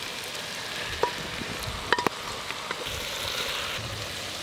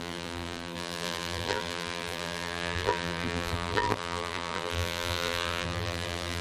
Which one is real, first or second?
first